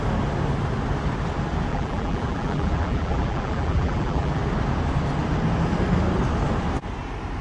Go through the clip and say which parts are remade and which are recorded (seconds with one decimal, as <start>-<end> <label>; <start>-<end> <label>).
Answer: 0.0-1.7 recorded; 1.7-4.4 remade; 4.4-7.4 recorded